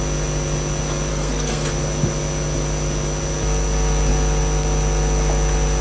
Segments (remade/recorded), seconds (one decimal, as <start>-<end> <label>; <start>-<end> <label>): 0.0-1.1 recorded; 1.1-1.7 remade; 1.7-5.8 recorded